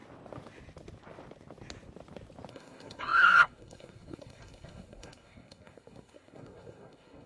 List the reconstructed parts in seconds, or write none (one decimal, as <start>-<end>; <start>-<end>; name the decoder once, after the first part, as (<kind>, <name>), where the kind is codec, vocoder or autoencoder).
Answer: 2.5-7.3 (codec, SNAC)